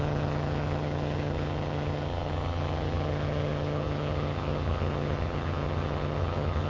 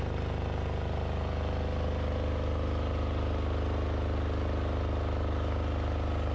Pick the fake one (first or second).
first